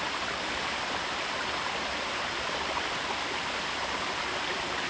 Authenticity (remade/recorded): remade